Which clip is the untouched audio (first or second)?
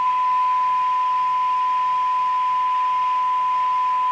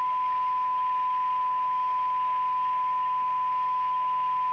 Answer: first